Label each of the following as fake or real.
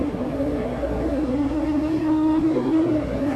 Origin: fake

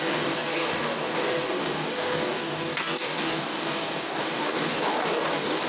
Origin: fake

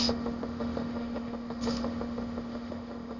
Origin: fake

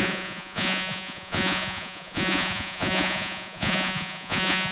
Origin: fake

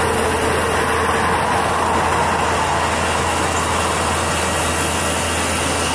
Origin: real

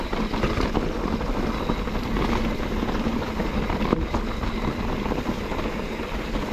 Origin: real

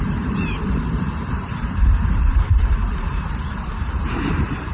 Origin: fake